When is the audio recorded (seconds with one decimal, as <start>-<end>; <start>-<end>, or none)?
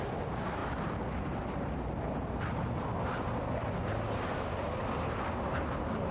0.0-6.1